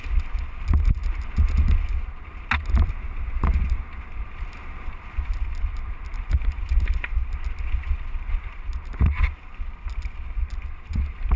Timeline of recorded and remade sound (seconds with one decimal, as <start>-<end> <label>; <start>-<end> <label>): 0.0-11.4 recorded